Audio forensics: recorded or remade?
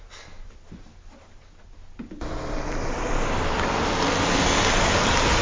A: recorded